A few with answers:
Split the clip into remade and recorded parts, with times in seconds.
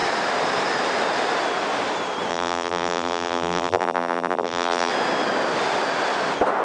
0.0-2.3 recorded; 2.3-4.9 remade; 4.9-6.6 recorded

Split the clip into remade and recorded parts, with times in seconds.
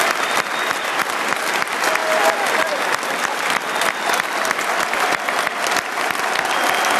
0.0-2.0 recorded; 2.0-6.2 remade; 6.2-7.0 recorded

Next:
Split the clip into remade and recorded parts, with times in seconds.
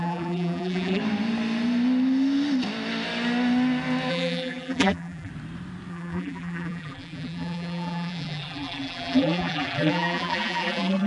0.0-1.0 remade; 1.0-4.1 recorded; 4.1-5.3 remade; 5.3-5.9 recorded; 5.9-11.1 remade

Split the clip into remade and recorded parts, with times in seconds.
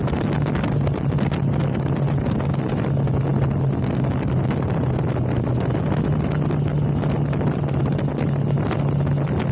0.0-9.5 recorded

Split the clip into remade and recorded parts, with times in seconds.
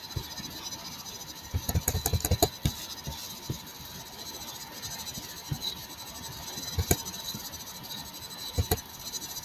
0.0-2.1 remade; 2.1-3.3 recorded; 3.3-9.4 remade